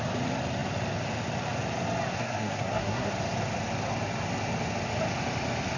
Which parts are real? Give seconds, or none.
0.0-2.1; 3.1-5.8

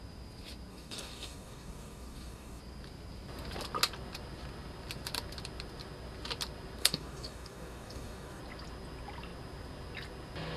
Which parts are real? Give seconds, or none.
0.0-0.7; 2.6-6.8; 8.4-10.6